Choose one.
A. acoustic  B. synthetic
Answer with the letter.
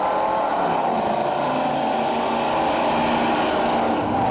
A